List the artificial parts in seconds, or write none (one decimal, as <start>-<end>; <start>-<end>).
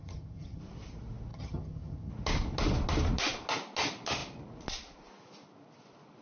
0.0-0.6; 1.3-2.1